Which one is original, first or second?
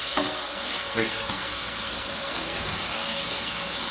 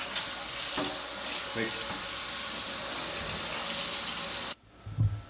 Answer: second